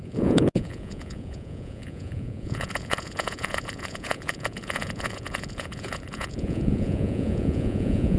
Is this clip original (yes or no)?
no